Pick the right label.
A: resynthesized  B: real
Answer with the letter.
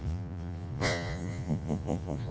A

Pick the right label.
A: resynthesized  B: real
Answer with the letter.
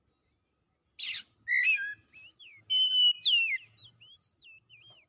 B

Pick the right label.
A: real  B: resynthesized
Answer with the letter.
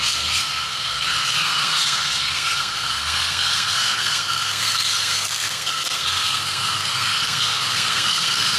B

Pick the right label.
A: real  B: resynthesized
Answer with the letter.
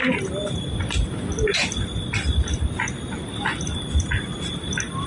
A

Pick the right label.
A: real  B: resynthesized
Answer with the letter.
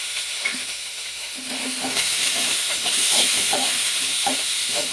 B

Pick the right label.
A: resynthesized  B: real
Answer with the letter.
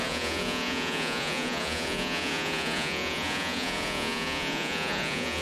A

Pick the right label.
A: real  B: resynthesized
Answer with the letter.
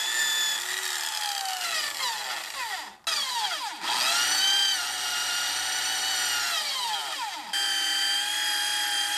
A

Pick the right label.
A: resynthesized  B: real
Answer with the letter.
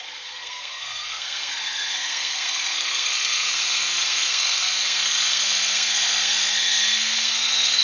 A